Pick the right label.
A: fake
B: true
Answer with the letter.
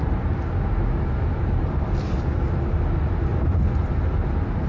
B